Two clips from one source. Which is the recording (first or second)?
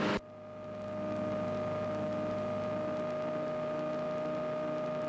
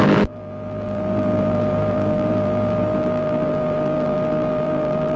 first